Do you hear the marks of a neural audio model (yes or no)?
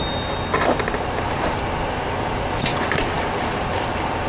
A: no